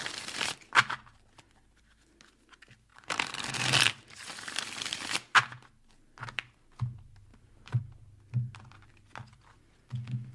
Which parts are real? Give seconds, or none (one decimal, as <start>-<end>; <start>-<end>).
0.0-2.9; 4.6-7.3; 7.8-10.3